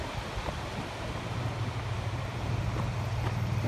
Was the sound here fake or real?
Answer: real